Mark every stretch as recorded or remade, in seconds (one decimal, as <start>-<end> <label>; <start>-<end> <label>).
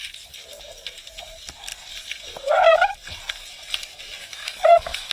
0.0-4.2 recorded; 4.2-5.1 remade